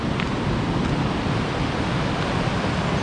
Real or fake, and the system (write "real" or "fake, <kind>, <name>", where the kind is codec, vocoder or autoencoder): real